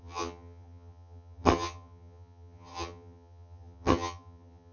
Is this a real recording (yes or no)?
no